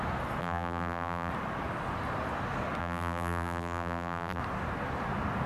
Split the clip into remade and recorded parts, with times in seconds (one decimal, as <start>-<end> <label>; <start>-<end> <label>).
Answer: 0.0-0.4 recorded; 0.4-1.3 remade; 1.3-2.8 recorded; 2.8-4.4 remade; 4.4-5.5 recorded

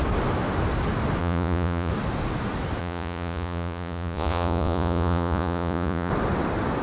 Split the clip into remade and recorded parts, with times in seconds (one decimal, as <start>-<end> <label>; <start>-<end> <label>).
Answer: 0.0-1.2 recorded; 1.2-1.9 remade; 1.9-2.8 recorded; 2.8-6.1 remade; 6.1-6.8 recorded

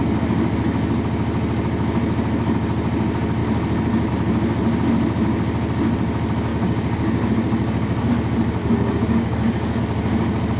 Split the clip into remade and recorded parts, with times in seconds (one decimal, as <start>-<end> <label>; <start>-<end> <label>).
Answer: 0.0-6.5 recorded; 6.5-8.1 remade; 8.1-8.6 recorded; 8.6-9.8 remade; 9.8-10.6 recorded

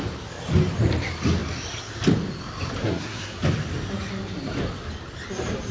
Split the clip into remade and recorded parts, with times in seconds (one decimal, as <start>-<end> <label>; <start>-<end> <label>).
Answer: 0.0-2.8 recorded; 2.8-3.4 remade; 3.4-5.7 recorded

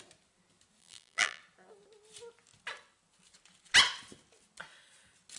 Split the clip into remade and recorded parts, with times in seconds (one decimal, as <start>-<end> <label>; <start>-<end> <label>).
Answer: 0.0-0.8 recorded; 0.8-1.4 remade; 1.4-5.4 recorded

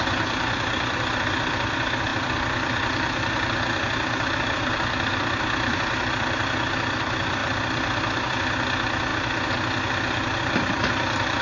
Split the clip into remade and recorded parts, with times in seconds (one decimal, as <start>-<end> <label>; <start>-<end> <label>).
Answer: 0.0-11.4 recorded

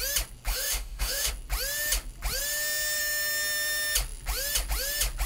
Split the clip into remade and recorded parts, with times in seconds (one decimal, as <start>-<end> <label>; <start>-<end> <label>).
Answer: 0.0-0.5 recorded; 0.5-1.3 remade; 1.3-5.3 recorded

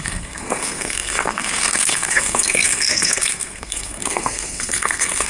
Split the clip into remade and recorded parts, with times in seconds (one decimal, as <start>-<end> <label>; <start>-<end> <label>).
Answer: 0.0-5.3 remade